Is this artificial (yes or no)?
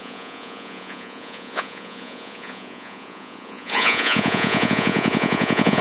yes